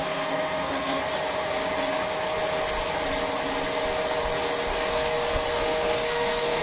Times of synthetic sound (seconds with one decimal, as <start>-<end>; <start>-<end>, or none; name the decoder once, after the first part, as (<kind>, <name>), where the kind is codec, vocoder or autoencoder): 0.0-1.0 (codec, SNAC); 4.7-6.6